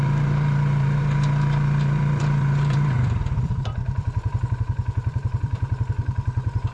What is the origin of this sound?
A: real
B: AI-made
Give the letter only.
B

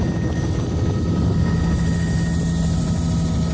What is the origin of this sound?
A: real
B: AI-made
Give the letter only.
A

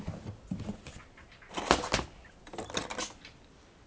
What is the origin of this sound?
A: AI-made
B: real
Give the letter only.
B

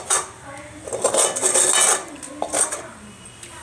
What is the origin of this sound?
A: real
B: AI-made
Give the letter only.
A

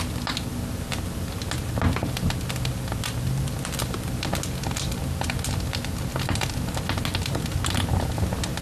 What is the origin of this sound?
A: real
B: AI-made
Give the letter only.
A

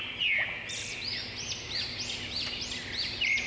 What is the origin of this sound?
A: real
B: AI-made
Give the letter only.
A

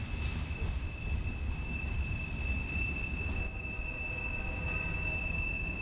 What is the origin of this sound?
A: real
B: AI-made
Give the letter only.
B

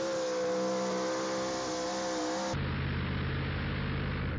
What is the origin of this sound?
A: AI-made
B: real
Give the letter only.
B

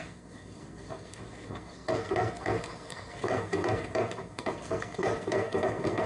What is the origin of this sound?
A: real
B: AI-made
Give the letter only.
B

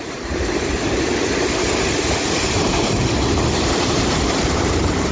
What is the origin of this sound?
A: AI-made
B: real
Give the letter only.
A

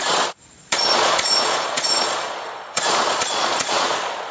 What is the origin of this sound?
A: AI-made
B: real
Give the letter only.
A